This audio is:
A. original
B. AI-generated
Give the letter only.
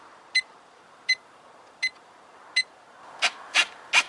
A